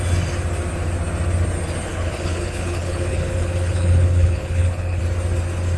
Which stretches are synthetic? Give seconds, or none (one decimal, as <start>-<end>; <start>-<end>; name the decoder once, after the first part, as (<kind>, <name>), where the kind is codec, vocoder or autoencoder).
1.9-5.0 (codec, HILCodec)